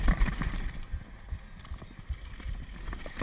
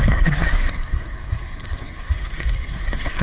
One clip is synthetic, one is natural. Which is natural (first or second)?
first